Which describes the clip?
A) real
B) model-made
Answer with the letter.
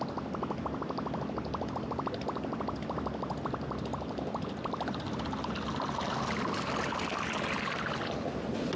A